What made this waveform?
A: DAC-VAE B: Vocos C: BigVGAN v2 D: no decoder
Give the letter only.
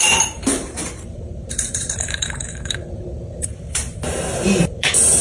C